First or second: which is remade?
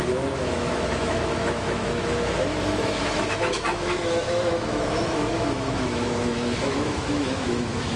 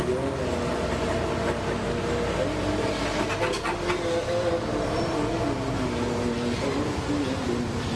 first